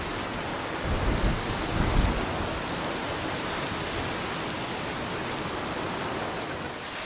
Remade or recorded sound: recorded